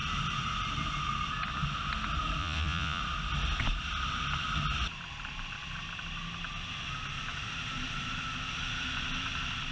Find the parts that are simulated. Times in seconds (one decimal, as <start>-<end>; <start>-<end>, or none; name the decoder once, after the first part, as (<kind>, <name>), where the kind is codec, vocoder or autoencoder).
2.4-3.0 (vocoder, Vocos)